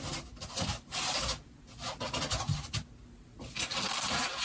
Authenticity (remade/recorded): recorded